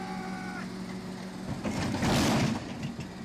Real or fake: real